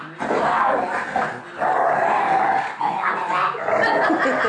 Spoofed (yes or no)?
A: no